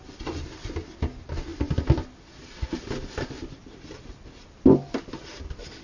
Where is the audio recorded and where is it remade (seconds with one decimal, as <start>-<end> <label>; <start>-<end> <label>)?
0.0-5.8 recorded